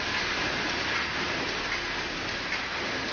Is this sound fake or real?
real